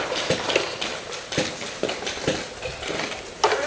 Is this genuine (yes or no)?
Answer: yes